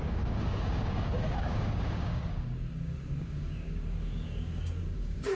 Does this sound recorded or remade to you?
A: remade